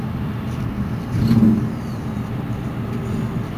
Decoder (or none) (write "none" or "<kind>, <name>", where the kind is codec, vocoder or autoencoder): none